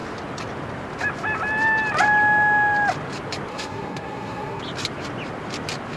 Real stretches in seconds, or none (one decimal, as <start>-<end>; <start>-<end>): 0.0-3.5; 4.6-6.0